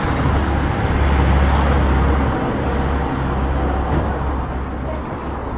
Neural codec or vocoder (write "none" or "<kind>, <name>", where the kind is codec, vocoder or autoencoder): none